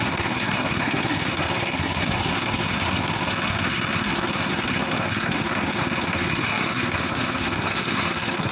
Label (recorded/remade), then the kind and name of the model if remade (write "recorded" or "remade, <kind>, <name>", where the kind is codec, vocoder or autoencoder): remade, codec, SNAC